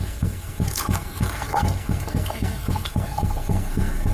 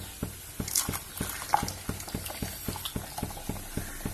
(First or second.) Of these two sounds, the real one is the second